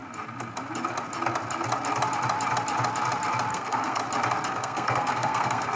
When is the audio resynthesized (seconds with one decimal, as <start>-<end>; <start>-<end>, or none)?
3.5-4.0; 4.5-5.8